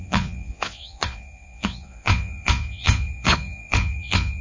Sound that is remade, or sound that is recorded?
remade